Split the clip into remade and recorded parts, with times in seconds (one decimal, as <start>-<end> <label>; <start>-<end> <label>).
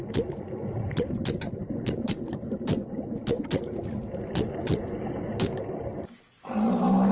0.0-7.1 recorded